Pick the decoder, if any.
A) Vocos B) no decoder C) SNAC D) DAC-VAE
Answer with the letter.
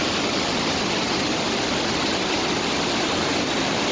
B